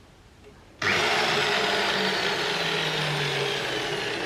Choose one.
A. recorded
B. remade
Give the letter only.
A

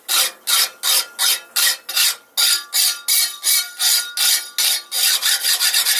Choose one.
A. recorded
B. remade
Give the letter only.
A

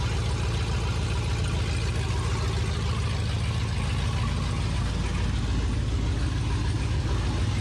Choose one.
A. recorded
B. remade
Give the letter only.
A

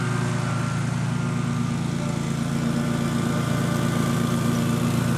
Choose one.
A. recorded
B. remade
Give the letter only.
A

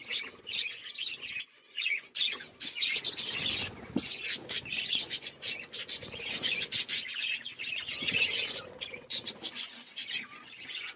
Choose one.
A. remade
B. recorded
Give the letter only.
A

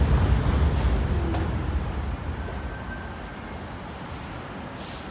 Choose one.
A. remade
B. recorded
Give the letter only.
B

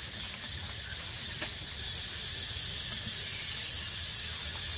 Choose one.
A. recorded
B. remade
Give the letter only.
A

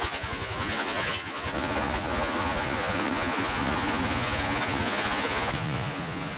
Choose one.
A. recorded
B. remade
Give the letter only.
B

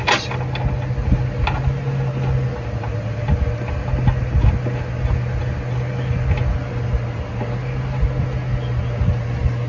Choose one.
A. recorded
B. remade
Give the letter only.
A